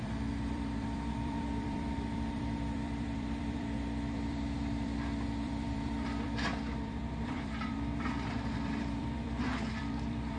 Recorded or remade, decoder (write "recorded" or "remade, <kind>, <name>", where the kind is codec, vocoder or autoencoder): remade, vocoder, BigVGAN v2